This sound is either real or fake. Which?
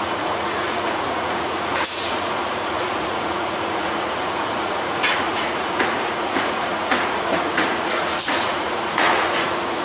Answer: fake